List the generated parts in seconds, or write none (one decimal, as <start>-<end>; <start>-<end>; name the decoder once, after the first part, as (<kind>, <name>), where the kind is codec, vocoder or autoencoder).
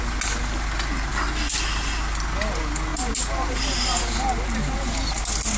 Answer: none